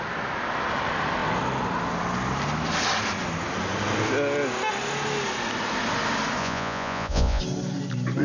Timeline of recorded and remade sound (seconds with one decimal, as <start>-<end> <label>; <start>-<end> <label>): 0.0-6.4 recorded; 6.4-7.4 remade; 7.4-8.2 recorded